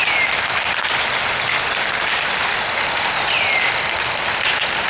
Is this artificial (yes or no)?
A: no